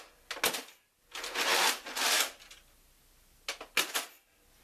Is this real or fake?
real